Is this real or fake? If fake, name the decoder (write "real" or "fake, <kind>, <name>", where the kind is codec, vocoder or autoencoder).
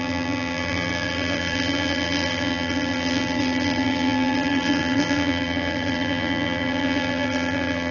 fake, vocoder, BigVGAN v2